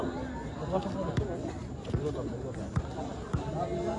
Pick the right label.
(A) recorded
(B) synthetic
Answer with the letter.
A